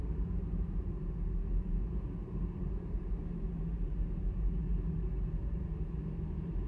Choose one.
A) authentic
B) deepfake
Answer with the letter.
B